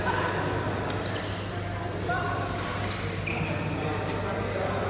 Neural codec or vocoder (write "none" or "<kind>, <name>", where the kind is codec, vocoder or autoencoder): none